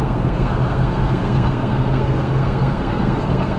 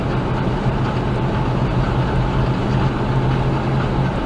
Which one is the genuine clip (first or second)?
second